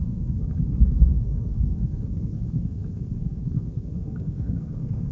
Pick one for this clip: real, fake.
fake